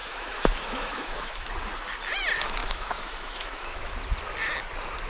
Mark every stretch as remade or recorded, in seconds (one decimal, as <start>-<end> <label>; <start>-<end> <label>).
0.0-1.5 remade; 1.5-2.6 recorded; 2.6-3.9 remade; 3.9-5.1 recorded